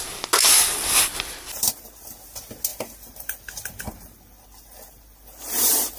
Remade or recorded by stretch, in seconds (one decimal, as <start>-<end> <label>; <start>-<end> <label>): 0.0-6.0 recorded